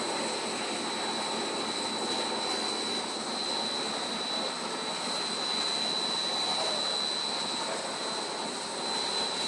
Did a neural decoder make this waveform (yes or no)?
no